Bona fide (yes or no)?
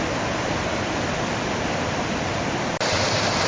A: yes